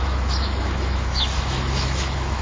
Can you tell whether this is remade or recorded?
remade